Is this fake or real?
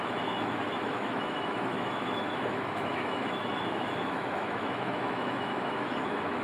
fake